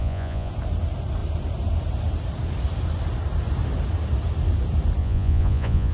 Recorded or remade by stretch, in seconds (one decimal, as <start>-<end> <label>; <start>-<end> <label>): 0.0-0.5 remade; 0.5-5.0 recorded; 5.0-5.9 remade